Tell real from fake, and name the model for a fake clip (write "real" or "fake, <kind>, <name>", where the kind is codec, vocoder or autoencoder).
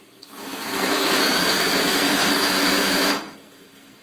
fake, codec, SNAC